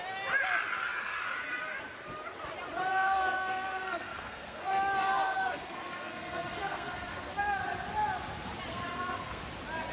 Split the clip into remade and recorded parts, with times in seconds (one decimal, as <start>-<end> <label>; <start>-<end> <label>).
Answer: 0.0-2.9 recorded; 2.9-7.6 remade; 7.6-8.7 recorded; 8.7-9.4 remade; 9.4-9.9 recorded